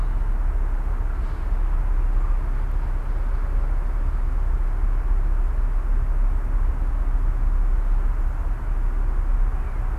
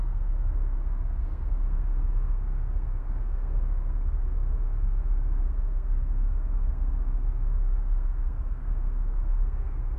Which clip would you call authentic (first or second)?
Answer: first